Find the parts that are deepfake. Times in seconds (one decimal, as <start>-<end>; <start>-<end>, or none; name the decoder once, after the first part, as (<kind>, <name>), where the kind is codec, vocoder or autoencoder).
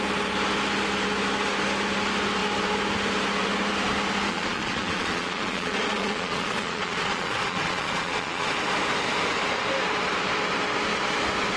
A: 4.3-8.5 (vocoder, Vocos)